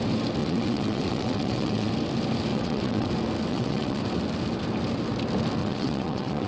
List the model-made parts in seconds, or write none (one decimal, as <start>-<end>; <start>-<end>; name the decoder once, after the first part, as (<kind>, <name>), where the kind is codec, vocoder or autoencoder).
0.4-1.9 (vocoder, WaveNeXt); 2.5-3.1; 3.5-4.0; 5.6-6.5